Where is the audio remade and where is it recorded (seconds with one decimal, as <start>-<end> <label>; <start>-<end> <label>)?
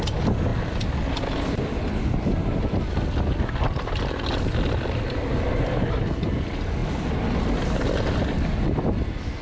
0.0-9.4 recorded